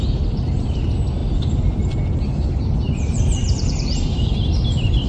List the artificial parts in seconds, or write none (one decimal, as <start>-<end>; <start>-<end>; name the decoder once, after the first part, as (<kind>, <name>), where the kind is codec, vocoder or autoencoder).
3.1-4.3 (vocoder, BigVGAN v2)